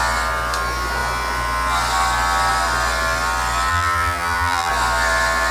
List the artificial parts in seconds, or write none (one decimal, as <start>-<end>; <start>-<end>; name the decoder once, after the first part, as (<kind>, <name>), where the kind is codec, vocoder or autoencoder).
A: 3.7-4.7 (vocoder, BigVGAN v2)